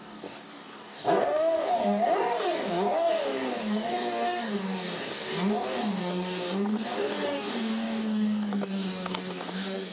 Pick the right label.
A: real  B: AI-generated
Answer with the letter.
B